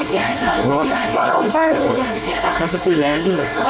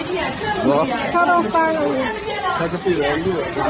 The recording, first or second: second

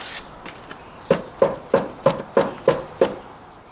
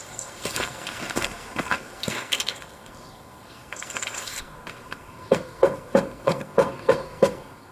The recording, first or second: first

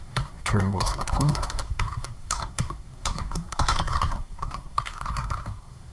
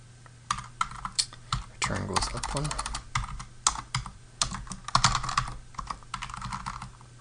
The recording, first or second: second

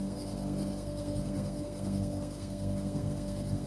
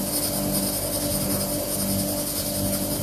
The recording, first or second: second